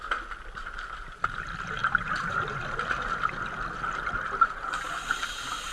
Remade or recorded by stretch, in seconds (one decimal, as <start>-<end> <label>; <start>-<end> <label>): 0.0-5.7 recorded